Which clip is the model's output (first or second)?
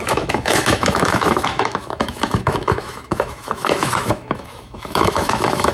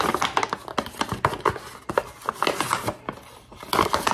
first